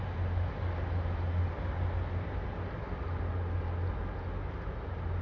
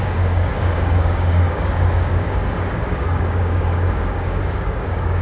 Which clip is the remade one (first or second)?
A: second